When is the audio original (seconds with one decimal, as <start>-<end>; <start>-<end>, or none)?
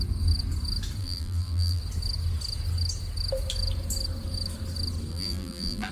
0.0-1.0; 1.8-5.1